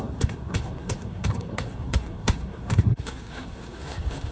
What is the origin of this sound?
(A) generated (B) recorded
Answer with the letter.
A